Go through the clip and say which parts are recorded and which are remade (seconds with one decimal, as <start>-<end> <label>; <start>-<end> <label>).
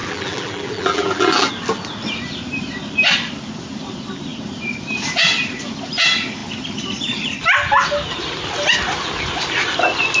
0.0-1.5 remade; 1.5-10.2 recorded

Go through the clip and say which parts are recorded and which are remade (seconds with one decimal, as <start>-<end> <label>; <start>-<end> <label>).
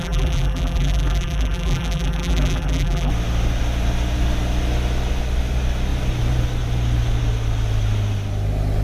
0.0-3.1 remade; 3.1-8.8 recorded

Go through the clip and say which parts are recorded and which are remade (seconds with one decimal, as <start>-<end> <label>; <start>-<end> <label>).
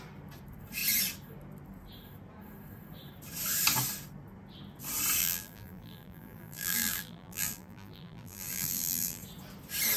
0.0-5.2 recorded; 5.2-9.2 remade; 9.2-10.0 recorded